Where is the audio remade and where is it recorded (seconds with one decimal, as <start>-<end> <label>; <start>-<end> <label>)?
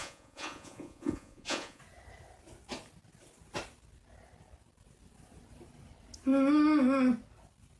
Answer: 0.0-1.8 remade; 1.8-7.8 recorded